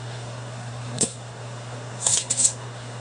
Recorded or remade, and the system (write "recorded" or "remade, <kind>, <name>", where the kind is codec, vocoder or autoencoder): remade, codec, SNAC